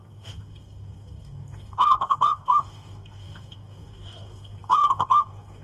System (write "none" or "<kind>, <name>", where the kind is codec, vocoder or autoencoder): codec, DAC